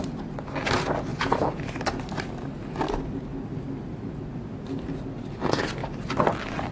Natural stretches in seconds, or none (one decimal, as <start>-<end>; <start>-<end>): 0.0-1.1; 1.7-6.7